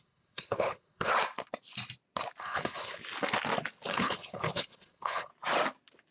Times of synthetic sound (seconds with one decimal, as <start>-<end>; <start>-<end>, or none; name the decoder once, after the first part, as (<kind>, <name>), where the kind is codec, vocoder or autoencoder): 0.0-1.1 (codec, HILCodec); 2.4-3.0; 3.9-5.3